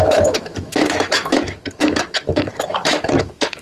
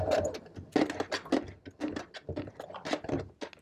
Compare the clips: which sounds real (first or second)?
second